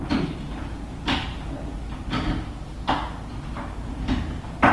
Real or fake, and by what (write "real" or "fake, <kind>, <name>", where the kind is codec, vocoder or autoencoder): real